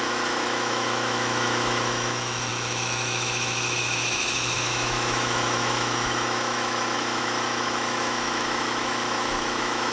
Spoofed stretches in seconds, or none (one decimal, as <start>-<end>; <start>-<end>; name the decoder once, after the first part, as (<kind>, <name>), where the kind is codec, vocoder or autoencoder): 0.0-9.9 (autoencoder, DAC-VAE)